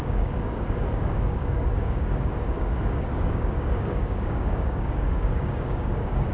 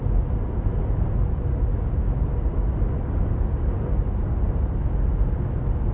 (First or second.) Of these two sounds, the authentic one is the second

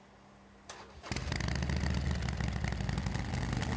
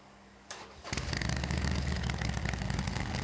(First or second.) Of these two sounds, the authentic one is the first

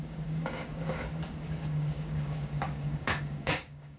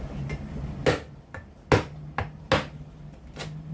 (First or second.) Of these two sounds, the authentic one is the second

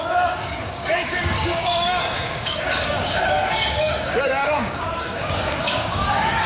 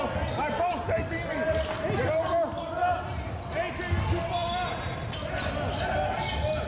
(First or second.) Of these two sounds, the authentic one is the second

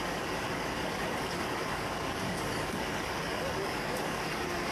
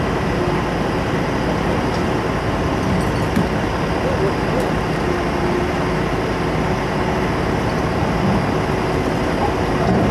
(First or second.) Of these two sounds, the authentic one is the second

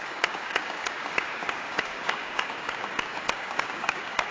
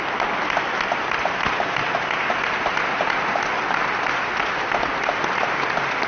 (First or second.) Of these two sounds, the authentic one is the second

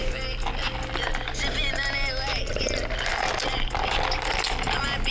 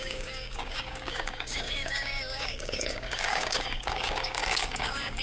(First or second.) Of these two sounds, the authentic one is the first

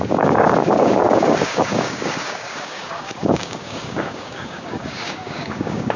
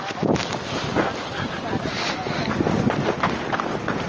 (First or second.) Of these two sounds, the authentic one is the second